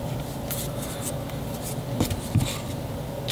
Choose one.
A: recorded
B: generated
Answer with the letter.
A